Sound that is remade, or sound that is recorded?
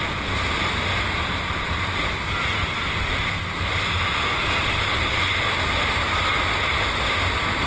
recorded